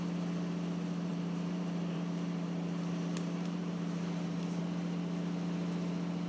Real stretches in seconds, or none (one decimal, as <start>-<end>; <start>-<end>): 0.0-1.1; 4.6-6.3